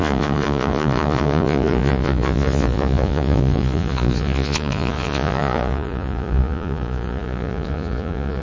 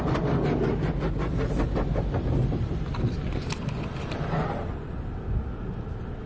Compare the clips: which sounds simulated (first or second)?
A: first